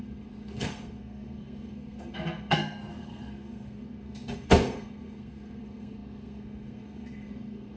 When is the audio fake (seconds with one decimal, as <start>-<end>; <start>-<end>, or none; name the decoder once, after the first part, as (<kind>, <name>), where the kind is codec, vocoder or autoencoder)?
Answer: 0.0-7.8 (codec, SNAC)